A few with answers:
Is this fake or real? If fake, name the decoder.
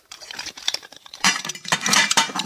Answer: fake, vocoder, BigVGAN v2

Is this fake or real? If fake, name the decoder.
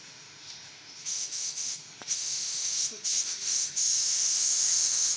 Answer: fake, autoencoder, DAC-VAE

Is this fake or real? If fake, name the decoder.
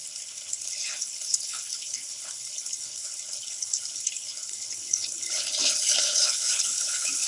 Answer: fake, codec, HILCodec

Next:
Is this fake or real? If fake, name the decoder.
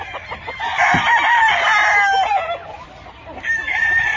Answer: real